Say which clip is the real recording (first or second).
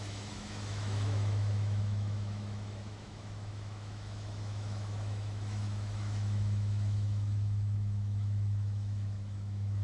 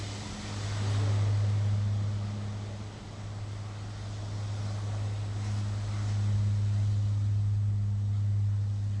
second